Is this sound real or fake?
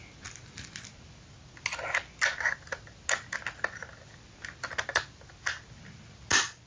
real